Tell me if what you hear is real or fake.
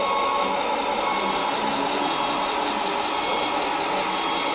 real